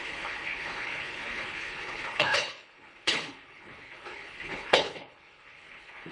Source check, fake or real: fake